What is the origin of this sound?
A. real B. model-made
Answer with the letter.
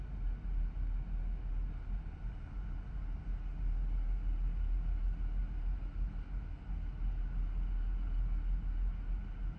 A